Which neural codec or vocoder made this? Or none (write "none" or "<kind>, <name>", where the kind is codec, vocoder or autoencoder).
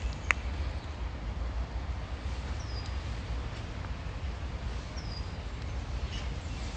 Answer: none